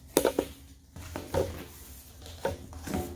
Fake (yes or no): no